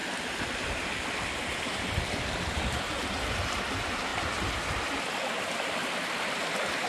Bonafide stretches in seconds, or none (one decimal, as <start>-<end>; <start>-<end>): 0.0-6.9